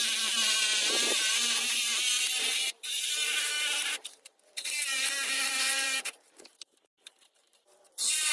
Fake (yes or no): yes